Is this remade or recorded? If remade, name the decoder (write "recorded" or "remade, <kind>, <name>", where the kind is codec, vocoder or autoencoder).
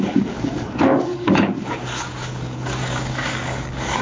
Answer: remade, codec, DAC